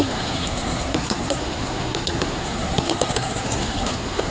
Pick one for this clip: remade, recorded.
remade